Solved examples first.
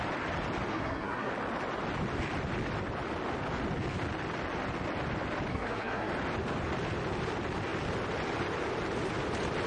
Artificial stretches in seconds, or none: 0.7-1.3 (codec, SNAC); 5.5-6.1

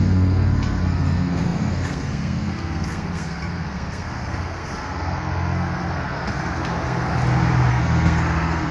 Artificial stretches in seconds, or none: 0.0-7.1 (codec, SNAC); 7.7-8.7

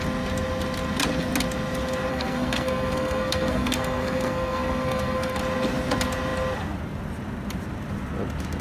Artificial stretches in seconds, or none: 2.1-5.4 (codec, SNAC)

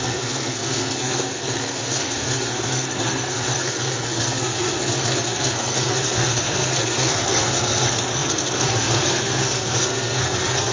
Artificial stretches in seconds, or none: 0.0-10.7 (codec, SNAC)

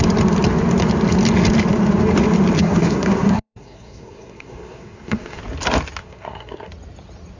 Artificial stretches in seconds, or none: 2.6-5.4 (codec, SNAC); 6.0-6.7